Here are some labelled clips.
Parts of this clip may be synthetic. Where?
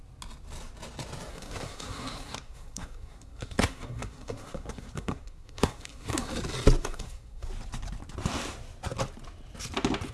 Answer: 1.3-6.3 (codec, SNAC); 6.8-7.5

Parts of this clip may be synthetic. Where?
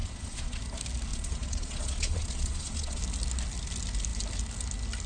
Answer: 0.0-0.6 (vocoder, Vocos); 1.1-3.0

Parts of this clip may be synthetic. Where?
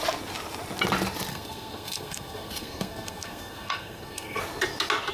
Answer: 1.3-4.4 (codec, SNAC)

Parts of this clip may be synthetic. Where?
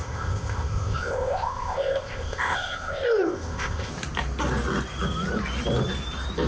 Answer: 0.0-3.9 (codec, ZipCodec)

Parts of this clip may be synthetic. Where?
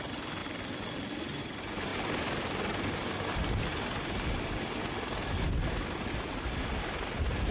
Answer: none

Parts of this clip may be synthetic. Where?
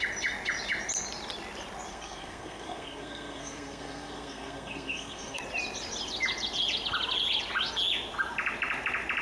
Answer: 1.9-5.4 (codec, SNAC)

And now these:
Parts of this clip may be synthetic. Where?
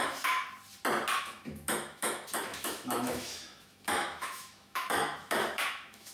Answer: 0.0-0.4 (autoencoder, DAC-VAE); 1.2-6.1